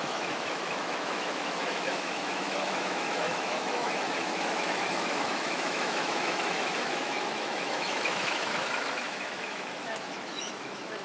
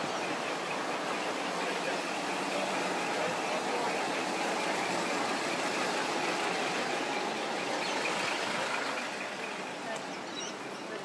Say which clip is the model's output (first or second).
first